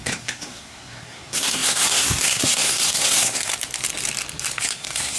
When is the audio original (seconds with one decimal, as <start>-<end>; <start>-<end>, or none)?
3.5-4.6